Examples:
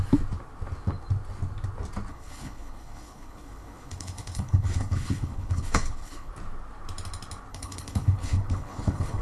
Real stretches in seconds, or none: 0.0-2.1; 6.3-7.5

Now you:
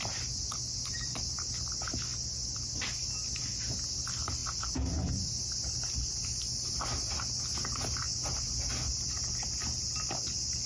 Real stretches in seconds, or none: 0.0-10.7

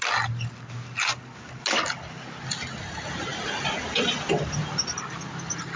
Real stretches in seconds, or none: 0.0-5.8

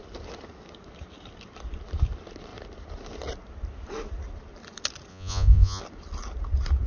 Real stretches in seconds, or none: 0.0-5.1; 5.8-6.9

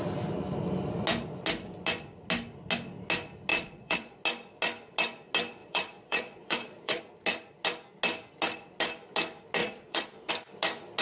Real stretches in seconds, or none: 0.0-3.5; 4.2-5.6; 7.0-9.6; 10.3-11.0